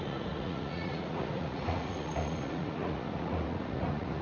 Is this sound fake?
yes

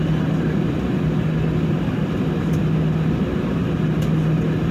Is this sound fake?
no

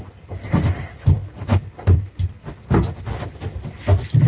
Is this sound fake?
no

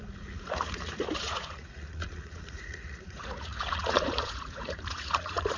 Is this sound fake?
yes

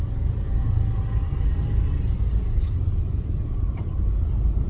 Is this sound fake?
no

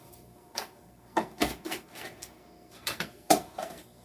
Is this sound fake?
yes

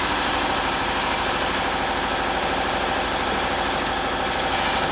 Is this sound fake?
no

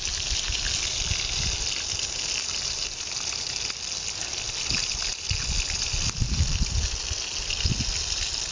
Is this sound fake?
no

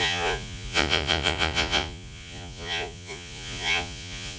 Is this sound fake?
yes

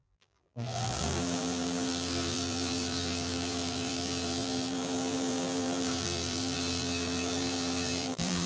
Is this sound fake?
yes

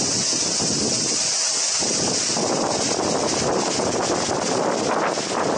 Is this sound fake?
no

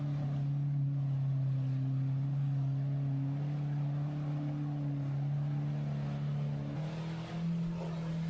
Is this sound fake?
no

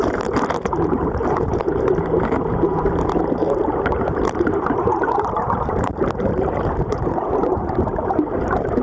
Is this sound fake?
yes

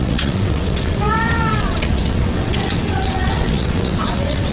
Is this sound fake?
yes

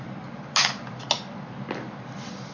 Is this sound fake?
no